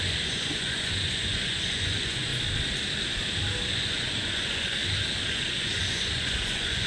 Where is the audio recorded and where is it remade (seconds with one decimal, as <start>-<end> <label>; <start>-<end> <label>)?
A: 0.0-2.3 remade; 2.3-3.7 recorded; 3.7-4.8 remade; 4.8-5.3 recorded; 5.3-6.9 remade